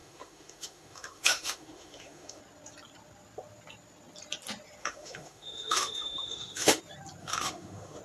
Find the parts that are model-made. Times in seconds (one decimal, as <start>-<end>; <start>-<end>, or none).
0.0-2.4; 4.8-6.8; 7.2-8.0